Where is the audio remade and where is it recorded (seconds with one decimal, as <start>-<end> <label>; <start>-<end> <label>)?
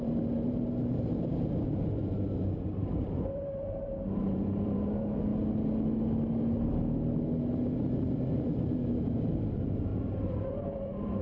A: 0.0-5.3 remade; 5.3-9.4 recorded; 9.4-11.2 remade